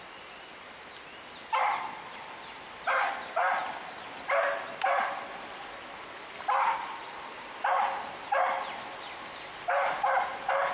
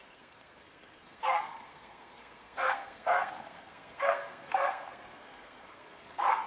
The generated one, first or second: second